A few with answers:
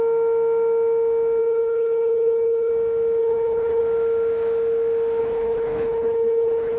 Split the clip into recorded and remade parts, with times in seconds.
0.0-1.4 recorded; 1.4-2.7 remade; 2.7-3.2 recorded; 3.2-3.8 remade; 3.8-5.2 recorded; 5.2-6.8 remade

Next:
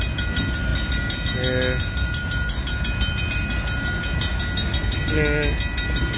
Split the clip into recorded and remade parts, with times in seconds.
0.0-6.2 recorded

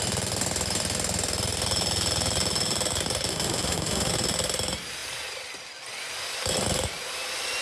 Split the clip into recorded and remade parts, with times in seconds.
0.0-3.3 recorded; 3.3-4.1 remade; 4.1-7.6 recorded

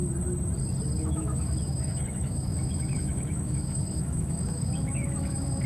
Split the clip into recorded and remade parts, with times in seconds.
0.0-1.0 recorded; 1.0-5.7 remade

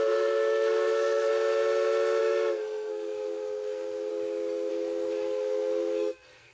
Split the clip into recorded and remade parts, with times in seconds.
0.0-1.3 remade; 1.3-2.2 recorded; 2.2-4.1 remade; 4.1-4.7 recorded; 4.7-6.5 remade